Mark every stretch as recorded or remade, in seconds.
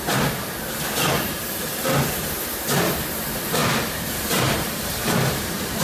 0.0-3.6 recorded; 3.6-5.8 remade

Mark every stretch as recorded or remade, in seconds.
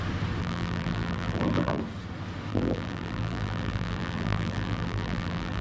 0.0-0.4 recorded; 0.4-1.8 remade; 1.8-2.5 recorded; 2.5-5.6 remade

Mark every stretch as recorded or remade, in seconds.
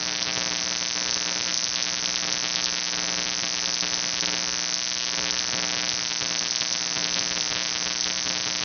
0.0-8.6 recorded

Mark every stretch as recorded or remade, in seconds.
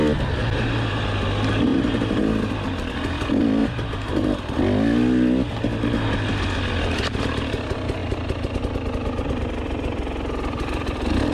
0.0-0.4 recorded; 0.4-1.1 remade; 1.1-1.7 recorded; 1.7-2.2 remade; 2.2-3.6 recorded; 3.6-4.6 remade; 4.6-11.3 recorded